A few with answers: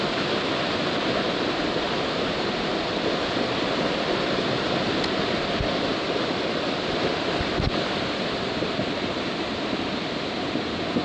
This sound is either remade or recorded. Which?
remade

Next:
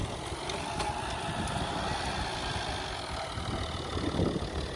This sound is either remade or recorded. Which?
recorded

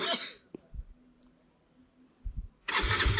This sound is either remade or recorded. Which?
recorded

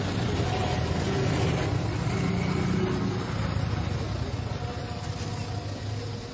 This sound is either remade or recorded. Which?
recorded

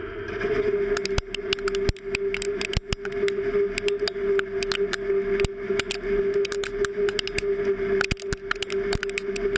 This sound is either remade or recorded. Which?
recorded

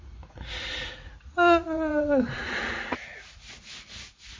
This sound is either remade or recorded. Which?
remade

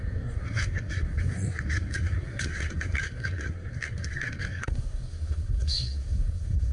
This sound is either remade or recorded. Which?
remade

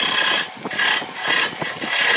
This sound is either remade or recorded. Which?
recorded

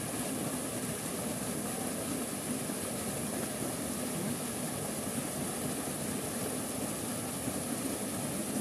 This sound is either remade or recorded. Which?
recorded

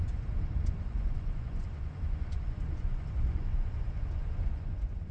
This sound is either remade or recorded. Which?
remade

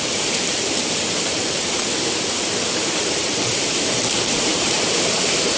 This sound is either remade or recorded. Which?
remade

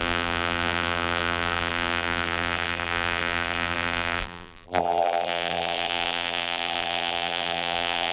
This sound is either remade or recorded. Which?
remade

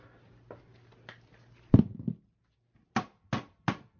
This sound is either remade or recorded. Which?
recorded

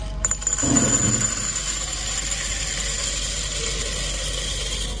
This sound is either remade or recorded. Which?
recorded